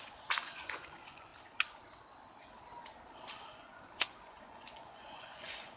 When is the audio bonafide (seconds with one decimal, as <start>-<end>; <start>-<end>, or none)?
1.3-3.3

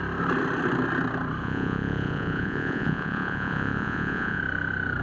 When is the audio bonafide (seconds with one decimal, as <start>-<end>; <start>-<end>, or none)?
0.0-1.4; 4.4-5.0